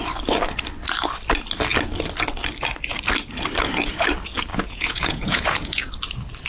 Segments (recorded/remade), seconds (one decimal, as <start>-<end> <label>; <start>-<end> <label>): 0.0-4.5 recorded; 4.5-5.9 remade; 5.9-6.5 recorded